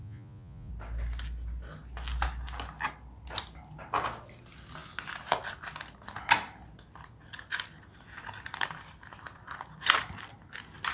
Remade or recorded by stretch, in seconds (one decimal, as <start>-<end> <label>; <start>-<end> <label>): 0.0-0.7 remade; 0.7-10.9 recorded